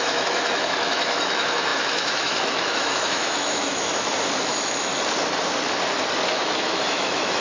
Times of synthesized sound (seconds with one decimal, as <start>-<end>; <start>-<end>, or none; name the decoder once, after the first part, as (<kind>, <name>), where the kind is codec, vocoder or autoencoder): 0.0-3.9 (autoencoder, DAC-VAE); 4.5-4.9; 6.3-7.4